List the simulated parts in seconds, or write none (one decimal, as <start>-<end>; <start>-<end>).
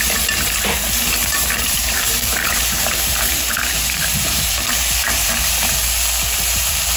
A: 1.2-5.4